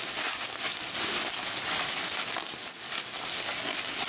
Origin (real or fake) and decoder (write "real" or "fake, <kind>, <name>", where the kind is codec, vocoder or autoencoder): real